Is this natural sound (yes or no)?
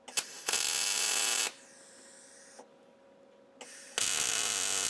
yes